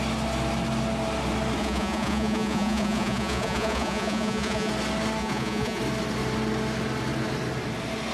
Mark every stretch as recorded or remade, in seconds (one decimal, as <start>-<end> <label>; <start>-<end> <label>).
0.0-1.6 recorded; 1.6-4.7 remade; 4.7-5.2 recorded; 5.2-5.8 remade; 5.8-8.1 recorded